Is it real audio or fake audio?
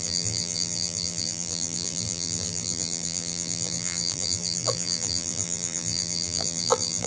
fake